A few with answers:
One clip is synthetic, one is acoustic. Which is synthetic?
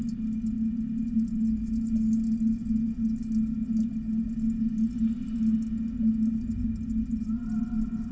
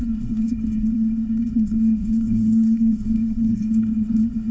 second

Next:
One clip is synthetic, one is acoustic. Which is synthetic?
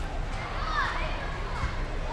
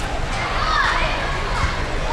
second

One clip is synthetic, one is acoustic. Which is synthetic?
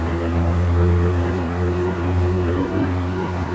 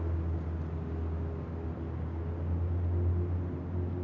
first